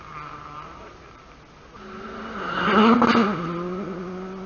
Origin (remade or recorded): recorded